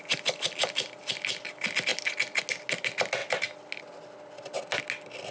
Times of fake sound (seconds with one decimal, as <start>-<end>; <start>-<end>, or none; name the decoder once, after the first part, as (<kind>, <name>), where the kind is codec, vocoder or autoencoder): none